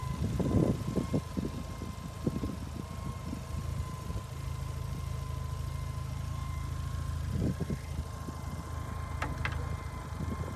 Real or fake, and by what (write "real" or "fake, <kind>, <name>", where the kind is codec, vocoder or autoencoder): real